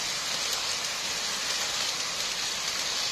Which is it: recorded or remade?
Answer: recorded